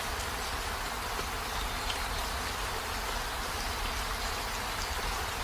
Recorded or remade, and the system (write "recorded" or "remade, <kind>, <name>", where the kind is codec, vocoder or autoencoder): remade, vocoder, BigVGAN v2